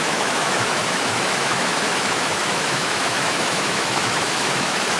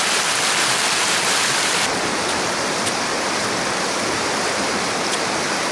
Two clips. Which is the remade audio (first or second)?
first